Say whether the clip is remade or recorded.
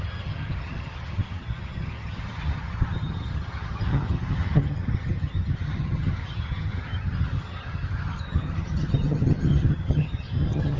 remade